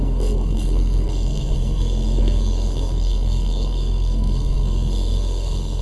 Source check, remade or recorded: remade